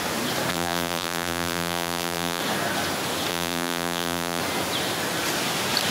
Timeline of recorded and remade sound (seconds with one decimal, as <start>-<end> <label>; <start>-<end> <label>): 0.0-0.5 recorded; 0.5-2.4 remade; 2.4-3.3 recorded; 3.3-4.4 remade; 4.4-5.9 recorded